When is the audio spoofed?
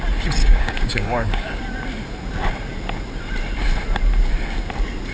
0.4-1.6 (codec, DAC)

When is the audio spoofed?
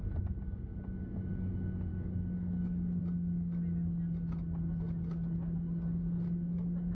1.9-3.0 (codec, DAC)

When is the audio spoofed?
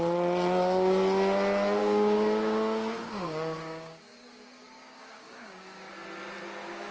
1.8-5.9 (codec, DAC)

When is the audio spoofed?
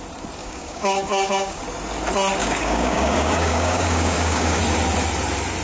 0.4-1.6 (codec, DAC); 2.4-4.6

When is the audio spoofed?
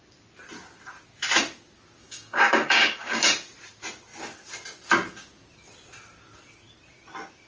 2.0-3.3 (codec, DAC)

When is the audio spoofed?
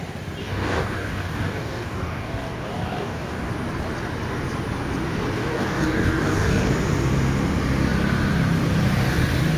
0.4-3.5 (codec, DAC); 5.4-6.7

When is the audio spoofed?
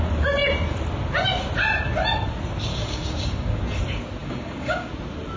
2.7-3.6 (codec, DAC); 4.2-4.9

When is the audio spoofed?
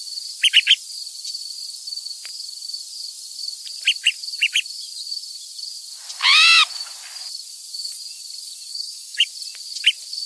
8.7-9.3 (codec, DAC)